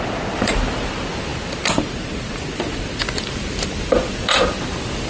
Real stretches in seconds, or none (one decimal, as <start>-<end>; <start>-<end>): none